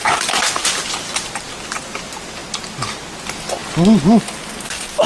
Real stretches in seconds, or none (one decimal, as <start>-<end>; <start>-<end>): 0.7-5.1

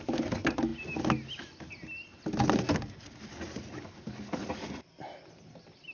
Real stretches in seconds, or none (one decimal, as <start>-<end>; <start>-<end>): 0.0-5.9

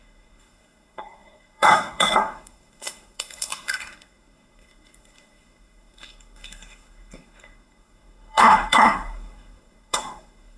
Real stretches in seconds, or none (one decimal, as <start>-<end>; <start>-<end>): none

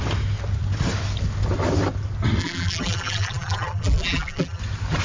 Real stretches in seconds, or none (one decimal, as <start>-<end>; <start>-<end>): 0.0-2.4; 4.6-5.0